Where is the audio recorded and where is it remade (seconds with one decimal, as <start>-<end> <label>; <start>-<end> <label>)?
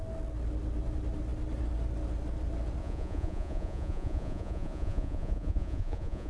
0.0-2.8 recorded; 2.8-6.3 remade